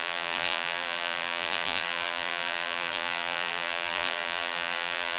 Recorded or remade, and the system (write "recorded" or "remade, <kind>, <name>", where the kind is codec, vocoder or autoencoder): remade, vocoder, BigVGAN v2